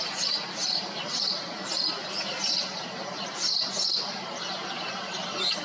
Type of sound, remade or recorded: recorded